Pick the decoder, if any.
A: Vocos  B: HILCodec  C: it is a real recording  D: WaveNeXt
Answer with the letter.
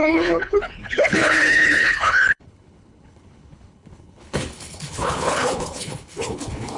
B